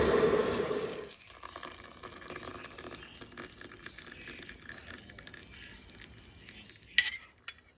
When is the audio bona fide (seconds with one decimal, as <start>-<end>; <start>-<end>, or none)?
0.0-0.4; 1.3-7.8